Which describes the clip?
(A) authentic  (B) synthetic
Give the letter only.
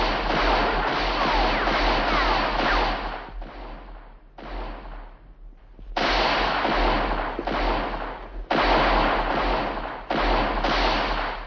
A